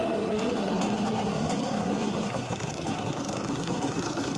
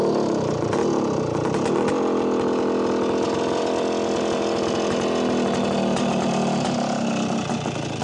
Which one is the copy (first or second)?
first